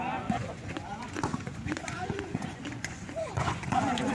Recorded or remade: remade